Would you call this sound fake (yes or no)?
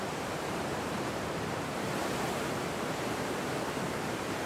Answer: yes